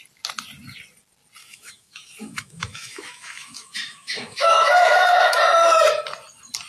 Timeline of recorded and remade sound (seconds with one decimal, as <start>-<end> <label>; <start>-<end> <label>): 0.0-1.4 recorded; 1.4-5.4 remade; 5.4-6.7 recorded